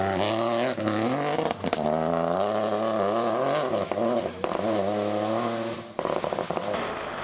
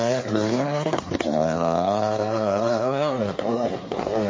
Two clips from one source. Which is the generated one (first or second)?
second